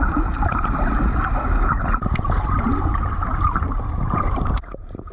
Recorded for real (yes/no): yes